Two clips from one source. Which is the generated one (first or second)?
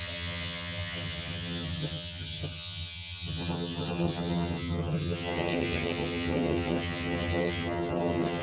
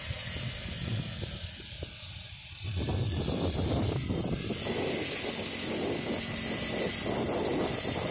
first